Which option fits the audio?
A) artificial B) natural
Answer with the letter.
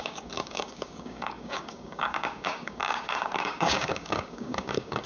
A